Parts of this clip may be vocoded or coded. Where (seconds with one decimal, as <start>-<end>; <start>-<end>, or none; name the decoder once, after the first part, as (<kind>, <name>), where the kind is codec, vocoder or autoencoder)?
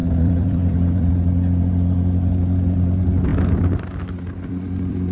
0.0-1.1 (vocoder, BigVGAN v2); 3.3-5.1